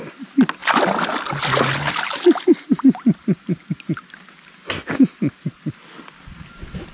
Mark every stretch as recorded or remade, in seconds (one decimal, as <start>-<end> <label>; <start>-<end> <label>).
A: 0.0-6.9 recorded